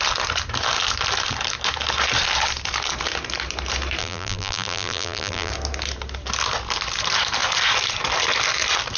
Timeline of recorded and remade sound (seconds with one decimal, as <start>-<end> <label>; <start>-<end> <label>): 0.0-4.0 recorded; 4.0-5.5 remade; 5.5-9.0 recorded

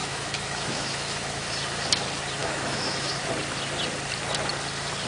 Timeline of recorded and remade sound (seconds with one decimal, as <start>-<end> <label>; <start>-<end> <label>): 0.0-1.5 remade; 1.5-2.4 recorded; 2.4-3.1 remade; 3.1-5.1 recorded

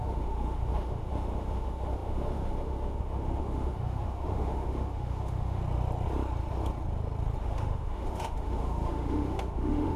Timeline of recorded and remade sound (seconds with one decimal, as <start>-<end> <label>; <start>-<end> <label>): 0.0-5.6 remade; 5.6-7.4 recorded; 7.4-10.0 remade

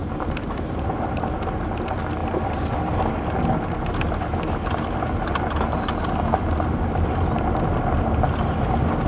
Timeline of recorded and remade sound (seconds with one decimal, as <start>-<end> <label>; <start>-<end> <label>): 0.0-1.3 remade; 1.3-9.1 recorded